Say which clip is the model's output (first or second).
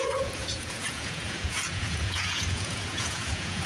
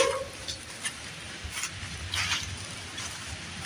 first